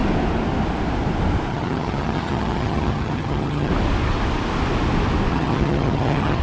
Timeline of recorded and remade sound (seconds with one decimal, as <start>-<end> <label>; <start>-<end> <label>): 0.0-1.5 recorded; 1.5-3.7 remade; 3.7-5.3 recorded; 5.3-6.4 remade